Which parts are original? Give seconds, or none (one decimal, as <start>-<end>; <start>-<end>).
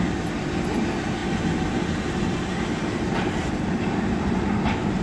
0.0-5.0